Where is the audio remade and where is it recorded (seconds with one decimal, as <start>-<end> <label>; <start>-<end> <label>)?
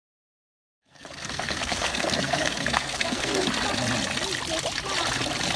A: 0.0-3.4 remade; 3.4-5.6 recorded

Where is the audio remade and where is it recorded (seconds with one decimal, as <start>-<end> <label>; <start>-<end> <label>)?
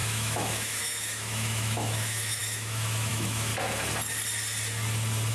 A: 0.0-3.5 remade; 3.5-5.3 recorded